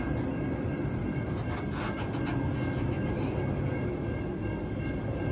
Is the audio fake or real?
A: real